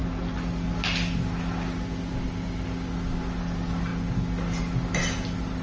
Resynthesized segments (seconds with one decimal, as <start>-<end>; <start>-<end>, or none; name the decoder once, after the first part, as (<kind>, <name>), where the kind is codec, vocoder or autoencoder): none